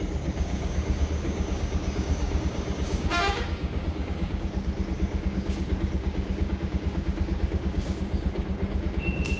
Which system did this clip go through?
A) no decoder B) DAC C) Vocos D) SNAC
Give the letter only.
B